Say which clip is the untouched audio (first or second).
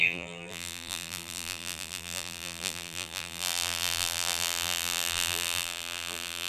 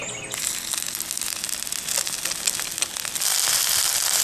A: second